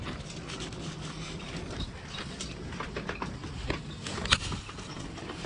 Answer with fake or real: real